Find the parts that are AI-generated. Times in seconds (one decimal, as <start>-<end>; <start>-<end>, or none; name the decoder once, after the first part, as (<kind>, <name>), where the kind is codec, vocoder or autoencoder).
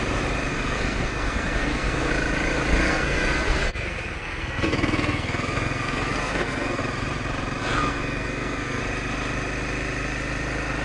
0.5-2.1 (codec, SNAC); 2.8-6.8; 7.6-8.8